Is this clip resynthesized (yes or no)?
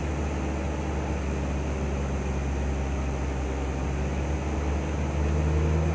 no